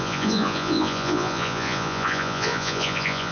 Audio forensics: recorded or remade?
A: remade